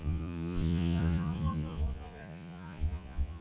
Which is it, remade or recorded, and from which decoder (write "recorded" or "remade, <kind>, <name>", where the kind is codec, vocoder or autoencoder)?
remade, vocoder, Vocos